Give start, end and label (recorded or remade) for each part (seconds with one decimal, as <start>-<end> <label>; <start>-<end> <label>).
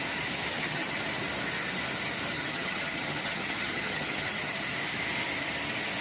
0.0-0.5 recorded; 0.5-1.0 remade; 1.0-2.3 recorded; 2.3-4.6 remade; 4.6-6.0 recorded